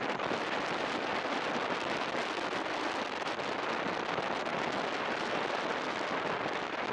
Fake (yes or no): no